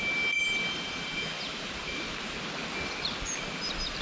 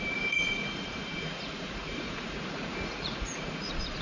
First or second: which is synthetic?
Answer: second